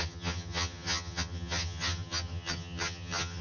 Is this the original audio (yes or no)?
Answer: no